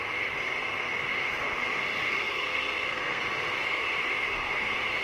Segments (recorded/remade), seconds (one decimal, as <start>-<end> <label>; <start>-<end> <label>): 0.0-2.1 recorded; 2.1-3.2 remade; 3.2-5.0 recorded